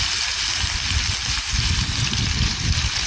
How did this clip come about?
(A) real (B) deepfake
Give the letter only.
A